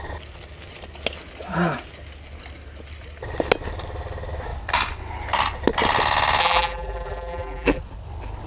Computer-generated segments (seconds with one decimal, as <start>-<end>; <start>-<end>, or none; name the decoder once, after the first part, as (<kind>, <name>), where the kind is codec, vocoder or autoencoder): 6.4-7.8 (vocoder, BigVGAN v2)